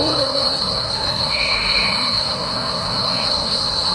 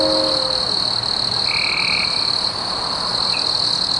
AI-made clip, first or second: first